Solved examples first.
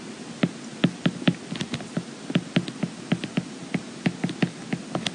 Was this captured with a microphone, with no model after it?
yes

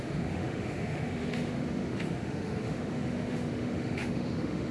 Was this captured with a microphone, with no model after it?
no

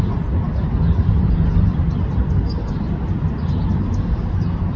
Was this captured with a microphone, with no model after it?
yes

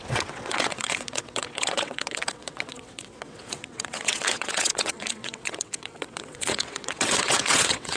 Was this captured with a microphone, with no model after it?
no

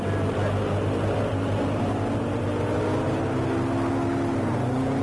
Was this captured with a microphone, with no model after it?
yes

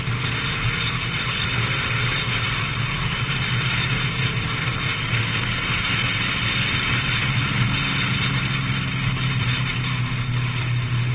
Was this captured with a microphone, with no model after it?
yes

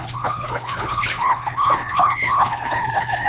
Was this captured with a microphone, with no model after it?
no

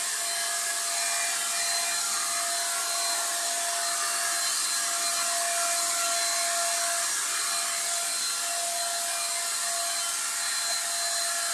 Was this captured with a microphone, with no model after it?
yes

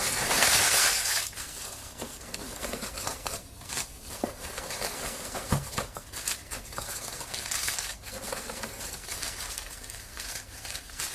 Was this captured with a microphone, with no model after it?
no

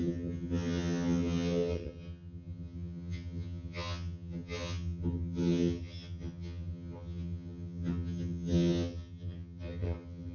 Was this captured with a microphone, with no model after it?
no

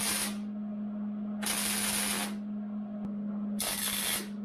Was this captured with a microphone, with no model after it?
yes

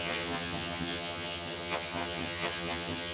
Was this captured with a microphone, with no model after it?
no